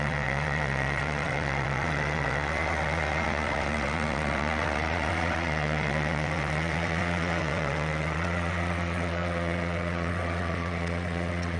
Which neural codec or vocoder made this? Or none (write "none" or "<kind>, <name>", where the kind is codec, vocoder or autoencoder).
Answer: vocoder, WaveNeXt